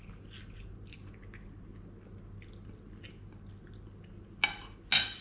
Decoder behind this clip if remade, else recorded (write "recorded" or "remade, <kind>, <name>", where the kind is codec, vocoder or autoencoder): recorded